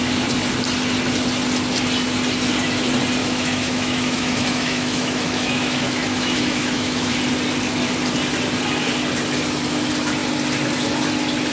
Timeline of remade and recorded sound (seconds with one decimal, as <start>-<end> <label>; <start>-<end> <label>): 0.0-3.2 recorded; 3.2-7.1 remade; 7.1-11.5 recorded